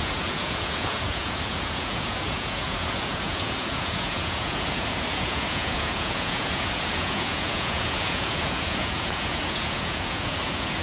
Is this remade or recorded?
remade